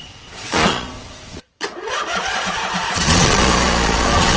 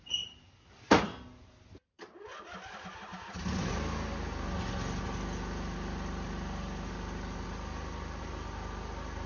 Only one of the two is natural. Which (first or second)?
second